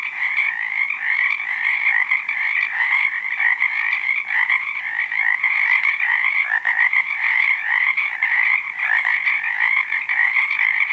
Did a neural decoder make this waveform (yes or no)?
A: yes